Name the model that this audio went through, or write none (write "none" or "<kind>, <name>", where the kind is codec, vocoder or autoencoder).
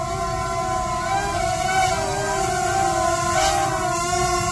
none